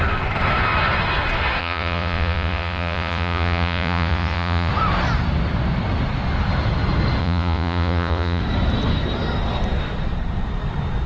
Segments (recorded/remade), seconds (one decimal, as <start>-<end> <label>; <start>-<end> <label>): 0.0-1.6 recorded; 1.6-4.7 remade; 4.7-7.2 recorded; 7.2-8.4 remade; 8.4-11.1 recorded